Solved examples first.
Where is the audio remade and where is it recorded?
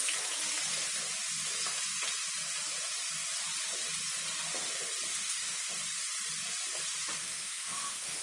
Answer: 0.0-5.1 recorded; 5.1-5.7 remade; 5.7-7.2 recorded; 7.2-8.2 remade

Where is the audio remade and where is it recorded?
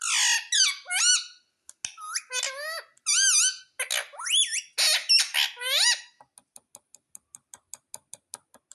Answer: 0.0-8.7 recorded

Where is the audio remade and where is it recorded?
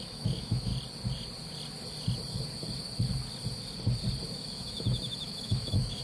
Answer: 0.0-0.7 remade; 0.7-4.3 recorded; 4.3-6.0 remade